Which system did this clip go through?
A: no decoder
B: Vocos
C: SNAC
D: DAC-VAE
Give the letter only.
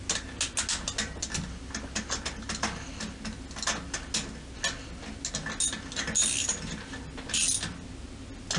A